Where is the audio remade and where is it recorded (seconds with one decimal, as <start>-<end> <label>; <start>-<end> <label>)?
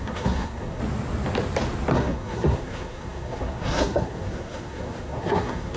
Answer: 0.0-0.8 remade; 0.8-1.9 recorded; 1.9-5.8 remade